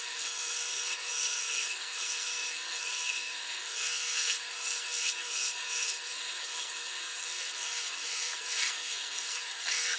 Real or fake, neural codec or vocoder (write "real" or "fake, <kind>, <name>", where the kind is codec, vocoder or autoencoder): fake, codec, SNAC